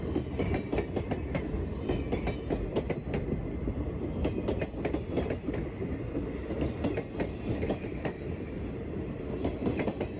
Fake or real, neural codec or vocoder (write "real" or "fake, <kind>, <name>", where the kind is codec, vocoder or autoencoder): real